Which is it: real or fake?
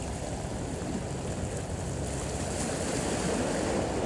real